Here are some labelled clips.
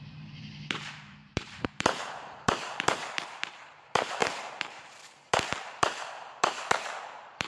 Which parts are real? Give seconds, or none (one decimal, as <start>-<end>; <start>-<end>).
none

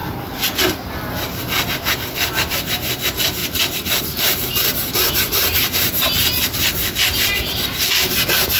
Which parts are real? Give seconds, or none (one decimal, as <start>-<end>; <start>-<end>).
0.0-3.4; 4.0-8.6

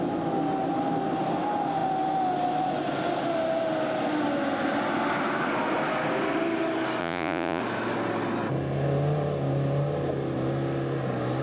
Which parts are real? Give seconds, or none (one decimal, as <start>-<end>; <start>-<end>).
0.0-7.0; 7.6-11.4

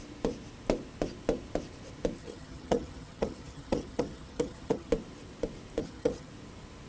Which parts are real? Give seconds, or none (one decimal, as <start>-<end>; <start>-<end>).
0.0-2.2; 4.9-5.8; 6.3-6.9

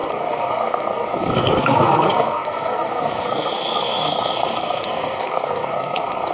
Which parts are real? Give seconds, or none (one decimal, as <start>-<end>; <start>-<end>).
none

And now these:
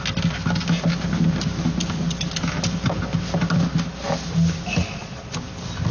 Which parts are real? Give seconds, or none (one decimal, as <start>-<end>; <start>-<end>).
0.0-4.8; 5.3-5.9